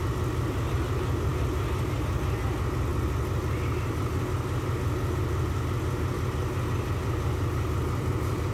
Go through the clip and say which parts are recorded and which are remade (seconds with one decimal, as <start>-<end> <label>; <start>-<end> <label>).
0.0-8.5 recorded